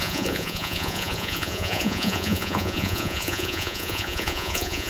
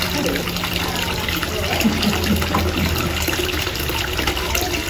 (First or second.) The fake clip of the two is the first